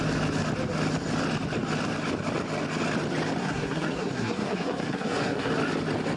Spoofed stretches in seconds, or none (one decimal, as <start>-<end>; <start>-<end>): 3.4-5.5